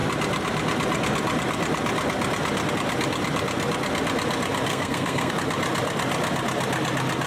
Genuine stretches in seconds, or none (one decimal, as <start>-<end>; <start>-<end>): 0.0-4.7; 5.3-7.3